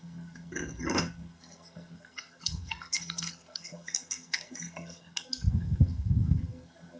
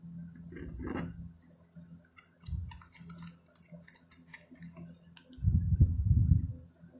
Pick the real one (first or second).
second